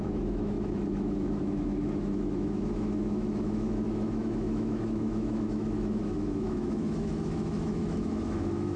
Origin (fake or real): fake